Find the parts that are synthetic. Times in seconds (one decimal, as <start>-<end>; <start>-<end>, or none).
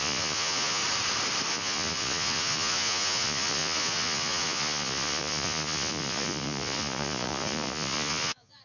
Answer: 0.0-0.8; 1.5-8.6